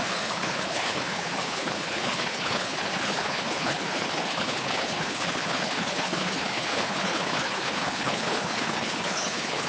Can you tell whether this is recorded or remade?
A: remade